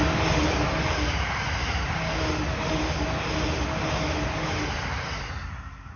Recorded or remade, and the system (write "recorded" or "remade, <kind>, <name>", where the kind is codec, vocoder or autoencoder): recorded